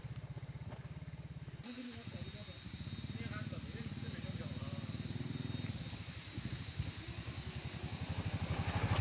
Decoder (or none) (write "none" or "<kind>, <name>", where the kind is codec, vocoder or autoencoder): none